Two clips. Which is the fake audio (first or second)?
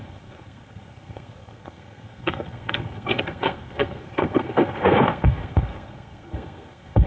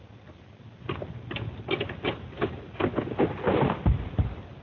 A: first